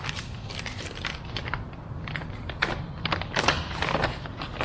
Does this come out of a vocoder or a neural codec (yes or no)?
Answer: no